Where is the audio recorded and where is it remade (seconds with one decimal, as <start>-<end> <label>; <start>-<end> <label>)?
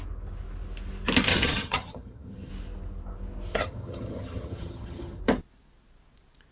0.0-1.3 recorded; 1.3-2.5 remade; 2.5-3.6 recorded; 3.6-5.2 remade; 5.2-6.5 recorded